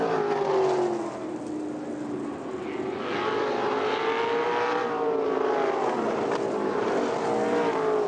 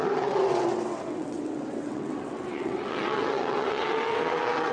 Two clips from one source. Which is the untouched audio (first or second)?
first